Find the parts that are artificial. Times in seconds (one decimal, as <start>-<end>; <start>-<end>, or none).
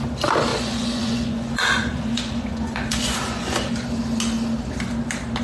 0.5-3.7